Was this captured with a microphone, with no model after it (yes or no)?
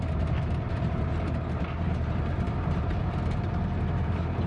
no